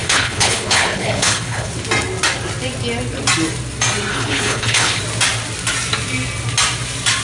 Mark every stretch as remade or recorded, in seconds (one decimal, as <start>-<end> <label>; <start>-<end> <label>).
0.0-1.7 remade; 1.7-4.1 recorded; 4.1-5.0 remade; 5.0-7.2 recorded